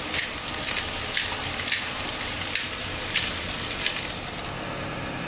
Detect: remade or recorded remade